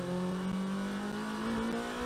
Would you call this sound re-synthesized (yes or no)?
no